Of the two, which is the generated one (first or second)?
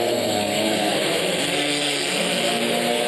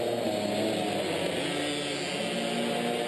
first